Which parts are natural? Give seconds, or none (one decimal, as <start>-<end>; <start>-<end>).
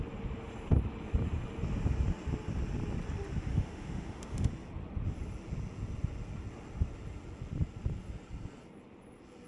0.0-3.5; 4.5-9.5